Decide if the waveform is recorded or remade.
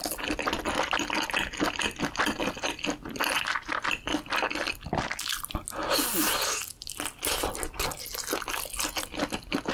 recorded